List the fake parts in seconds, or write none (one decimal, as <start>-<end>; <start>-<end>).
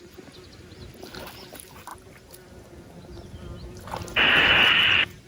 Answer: none